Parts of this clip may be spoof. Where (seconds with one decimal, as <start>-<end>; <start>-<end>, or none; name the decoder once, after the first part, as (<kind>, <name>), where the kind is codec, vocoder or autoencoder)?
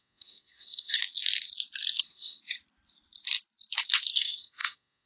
0.0-1.0 (codec, SNAC); 2.0-2.4; 4.1-5.1